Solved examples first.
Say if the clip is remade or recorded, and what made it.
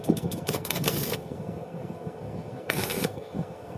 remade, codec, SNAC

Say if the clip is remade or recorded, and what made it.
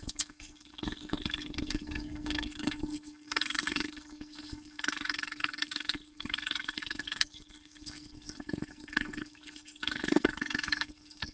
remade, codec, SNAC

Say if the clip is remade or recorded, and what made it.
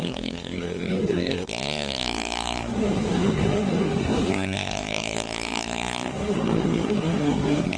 remade, codec, SNAC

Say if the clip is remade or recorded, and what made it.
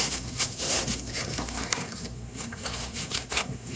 remade, codec, SNAC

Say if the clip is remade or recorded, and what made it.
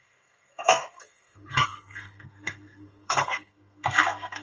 remade, codec, SNAC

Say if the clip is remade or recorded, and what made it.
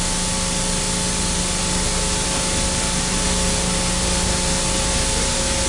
recorded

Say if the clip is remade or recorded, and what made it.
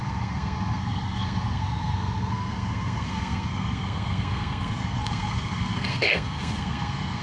remade, codec, SNAC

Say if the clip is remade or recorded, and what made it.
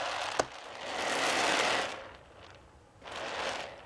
recorded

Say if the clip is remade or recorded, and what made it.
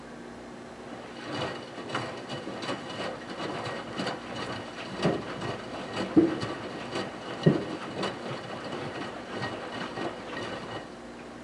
recorded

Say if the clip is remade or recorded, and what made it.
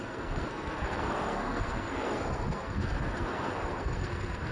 remade, codec, SNAC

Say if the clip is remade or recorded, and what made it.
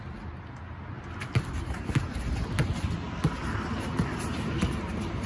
recorded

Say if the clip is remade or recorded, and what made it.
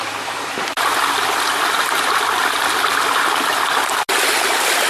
recorded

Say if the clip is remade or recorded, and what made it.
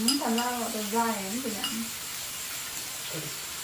recorded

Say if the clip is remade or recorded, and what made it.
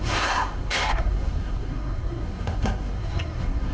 remade, codec, SNAC